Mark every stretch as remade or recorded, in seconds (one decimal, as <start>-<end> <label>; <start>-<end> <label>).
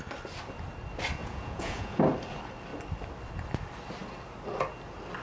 0.0-1.2 recorded; 1.2-2.0 remade; 2.0-5.2 recorded